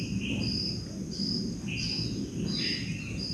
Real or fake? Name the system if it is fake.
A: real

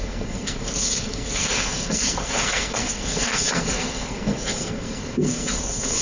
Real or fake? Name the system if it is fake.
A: fake, codec, SNAC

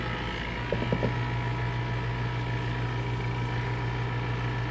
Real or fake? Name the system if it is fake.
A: real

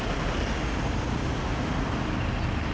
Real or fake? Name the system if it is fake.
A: real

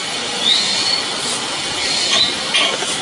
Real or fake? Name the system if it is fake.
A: real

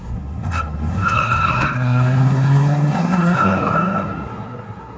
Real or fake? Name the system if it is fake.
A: fake, codec, SNAC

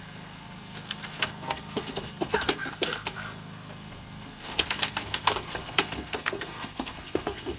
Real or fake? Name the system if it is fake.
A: fake, codec, SNAC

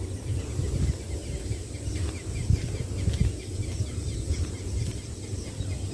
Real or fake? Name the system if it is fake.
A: real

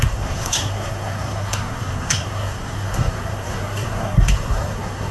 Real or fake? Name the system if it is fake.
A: fake, codec, SNAC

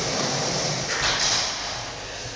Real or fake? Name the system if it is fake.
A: real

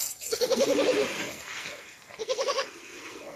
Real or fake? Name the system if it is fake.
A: fake, codec, SNAC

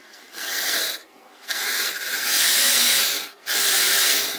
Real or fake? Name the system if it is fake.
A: fake, codec, SNAC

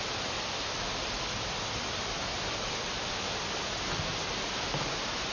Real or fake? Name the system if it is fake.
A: real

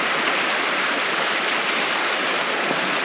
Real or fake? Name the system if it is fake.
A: real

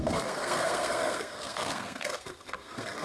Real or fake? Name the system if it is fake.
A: fake, codec, SNAC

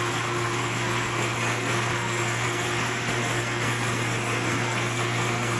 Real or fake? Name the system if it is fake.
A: fake, codec, SNAC